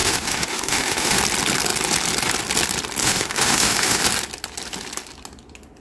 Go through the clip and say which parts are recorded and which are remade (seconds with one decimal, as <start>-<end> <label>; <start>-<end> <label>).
0.0-1.2 remade; 1.2-3.0 recorded; 3.0-4.0 remade; 4.0-5.8 recorded